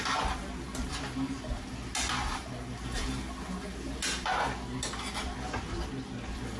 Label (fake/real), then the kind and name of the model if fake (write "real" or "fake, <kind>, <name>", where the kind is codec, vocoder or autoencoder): real